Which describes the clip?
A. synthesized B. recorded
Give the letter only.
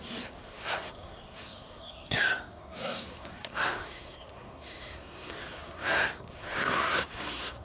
A